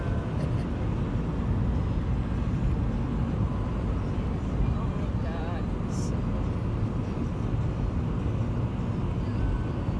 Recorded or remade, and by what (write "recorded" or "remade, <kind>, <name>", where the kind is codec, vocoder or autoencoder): recorded